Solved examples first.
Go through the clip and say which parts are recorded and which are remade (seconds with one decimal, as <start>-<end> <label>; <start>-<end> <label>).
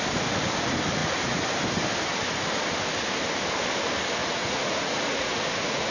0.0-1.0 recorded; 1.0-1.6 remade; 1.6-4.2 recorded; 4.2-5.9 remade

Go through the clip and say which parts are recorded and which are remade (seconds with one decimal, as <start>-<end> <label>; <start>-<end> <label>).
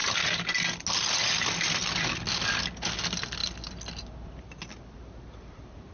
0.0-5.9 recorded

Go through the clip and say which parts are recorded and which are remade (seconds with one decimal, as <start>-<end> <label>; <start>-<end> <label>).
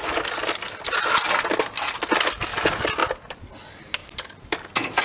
0.0-5.0 recorded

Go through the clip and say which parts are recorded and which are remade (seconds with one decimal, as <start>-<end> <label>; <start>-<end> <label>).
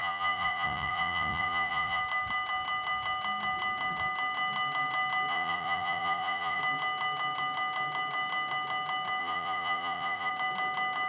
0.0-2.0 remade; 2.0-5.3 recorded; 5.3-6.6 remade; 6.6-9.2 recorded; 9.2-10.3 remade; 10.3-11.1 recorded